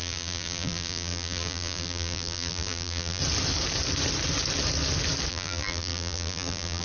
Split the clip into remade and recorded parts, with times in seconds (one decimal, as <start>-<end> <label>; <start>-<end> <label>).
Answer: 0.0-3.2 remade; 3.2-5.3 recorded; 5.3-6.8 remade